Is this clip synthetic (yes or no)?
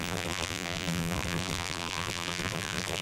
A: yes